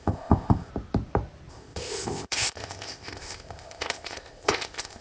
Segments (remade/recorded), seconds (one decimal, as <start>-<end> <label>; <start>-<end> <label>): 0.0-0.7 remade; 0.7-1.5 recorded; 1.5-5.0 remade